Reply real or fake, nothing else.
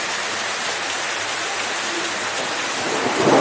fake